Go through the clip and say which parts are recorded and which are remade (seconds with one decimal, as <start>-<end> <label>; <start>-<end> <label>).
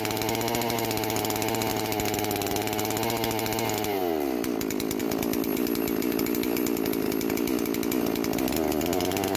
0.0-9.4 recorded